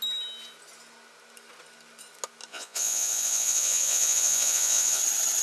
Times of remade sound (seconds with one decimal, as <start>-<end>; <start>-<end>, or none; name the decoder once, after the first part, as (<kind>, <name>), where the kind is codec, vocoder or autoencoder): 2.5-5.0 (vocoder, Vocos)

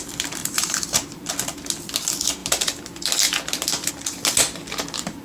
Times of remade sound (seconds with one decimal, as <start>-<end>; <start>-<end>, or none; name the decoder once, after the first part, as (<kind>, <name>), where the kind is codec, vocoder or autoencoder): 0.4-1.3 (vocoder, BigVGAN v2)

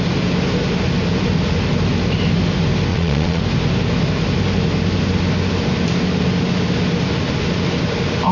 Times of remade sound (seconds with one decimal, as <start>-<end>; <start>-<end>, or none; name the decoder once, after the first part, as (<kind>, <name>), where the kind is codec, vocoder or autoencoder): 2.9-3.4 (vocoder, Vocos)

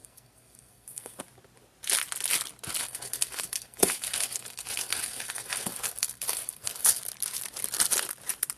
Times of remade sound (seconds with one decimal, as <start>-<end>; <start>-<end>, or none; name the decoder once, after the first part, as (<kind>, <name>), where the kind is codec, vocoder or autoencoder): 0.0-1.2 (codec, SNAC); 2.8-7.0

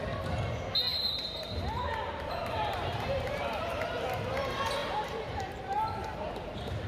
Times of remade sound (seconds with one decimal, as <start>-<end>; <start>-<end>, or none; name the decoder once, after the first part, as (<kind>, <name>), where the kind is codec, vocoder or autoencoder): 0.9-3.4 (vocoder, BigVGAN v2); 4.8-6.9